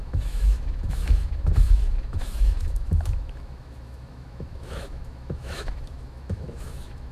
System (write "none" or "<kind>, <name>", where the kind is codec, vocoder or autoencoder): autoencoder, DAC-VAE